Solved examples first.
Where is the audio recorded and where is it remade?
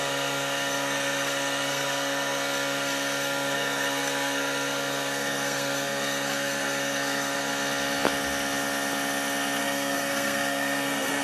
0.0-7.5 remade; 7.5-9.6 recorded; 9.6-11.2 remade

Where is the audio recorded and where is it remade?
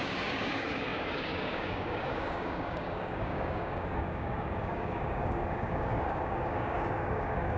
0.0-7.6 remade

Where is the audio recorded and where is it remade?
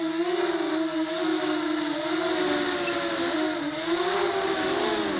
0.0-5.2 recorded